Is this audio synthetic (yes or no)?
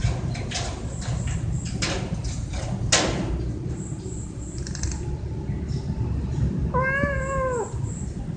no